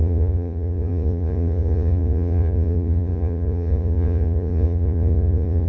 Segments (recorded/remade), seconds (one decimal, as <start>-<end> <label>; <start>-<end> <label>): 0.0-5.7 remade